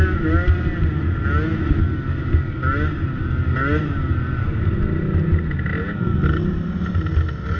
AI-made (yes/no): no